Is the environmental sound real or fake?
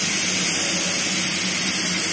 real